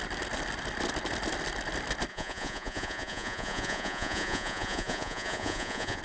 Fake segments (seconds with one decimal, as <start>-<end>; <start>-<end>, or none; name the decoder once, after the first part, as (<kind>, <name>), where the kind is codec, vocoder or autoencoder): 2.1-6.0 (vocoder, Vocos)

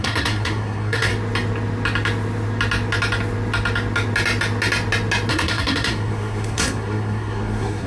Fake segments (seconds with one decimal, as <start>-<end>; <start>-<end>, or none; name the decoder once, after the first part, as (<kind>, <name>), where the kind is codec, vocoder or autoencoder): 0.0-1.1 (codec, SNAC); 5.3-7.9

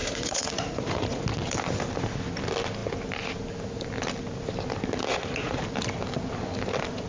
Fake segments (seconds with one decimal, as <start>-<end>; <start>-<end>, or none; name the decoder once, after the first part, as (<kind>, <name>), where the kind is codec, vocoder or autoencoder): 0.0-1.2 (vocoder, Vocos); 5.1-5.6

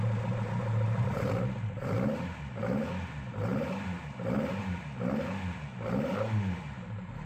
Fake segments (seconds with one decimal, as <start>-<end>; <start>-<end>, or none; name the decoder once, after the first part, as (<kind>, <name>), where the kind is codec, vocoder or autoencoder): none

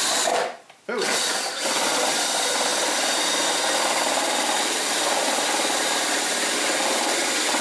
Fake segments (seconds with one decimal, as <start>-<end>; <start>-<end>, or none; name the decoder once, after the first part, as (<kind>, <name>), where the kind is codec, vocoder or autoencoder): 0.0-7.6 (vocoder, BigVGAN v2)

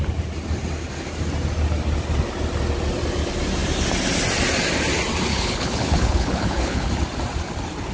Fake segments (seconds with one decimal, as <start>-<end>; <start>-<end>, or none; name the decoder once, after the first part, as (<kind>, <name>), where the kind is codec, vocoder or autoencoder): 5.3-6.9 (codec, HILCodec)

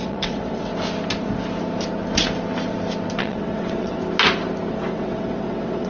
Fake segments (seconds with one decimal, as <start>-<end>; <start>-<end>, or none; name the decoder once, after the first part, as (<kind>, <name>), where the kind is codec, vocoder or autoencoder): 0.0-0.7 (vocoder, WaveNeXt); 3.2-4.0; 4.7-5.9